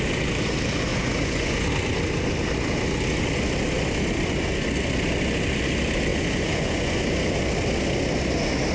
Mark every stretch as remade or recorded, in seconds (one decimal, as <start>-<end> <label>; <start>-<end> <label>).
0.0-0.9 recorded; 0.9-1.7 remade; 1.7-6.1 recorded; 6.1-7.0 remade; 7.0-8.7 recorded